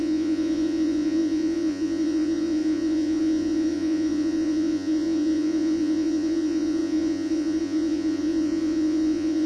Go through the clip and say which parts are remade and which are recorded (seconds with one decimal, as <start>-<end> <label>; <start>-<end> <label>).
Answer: 0.0-9.5 remade